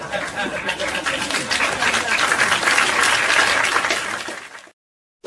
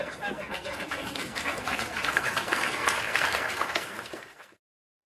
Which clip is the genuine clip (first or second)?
first